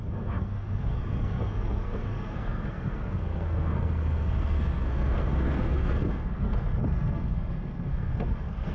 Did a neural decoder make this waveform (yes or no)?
yes